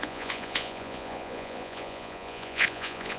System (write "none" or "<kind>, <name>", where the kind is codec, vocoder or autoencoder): vocoder, Vocos